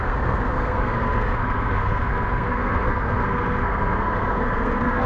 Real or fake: fake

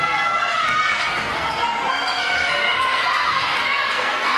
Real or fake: fake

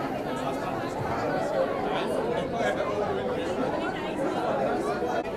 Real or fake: real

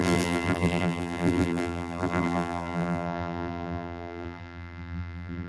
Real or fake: fake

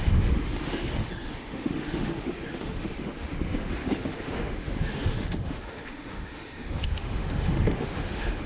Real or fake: fake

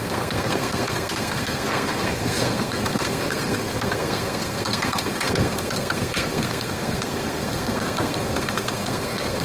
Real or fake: fake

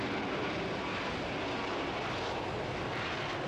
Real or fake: real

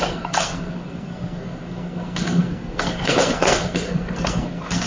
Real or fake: fake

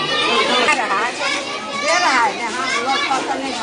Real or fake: real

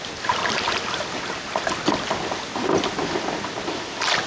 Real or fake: real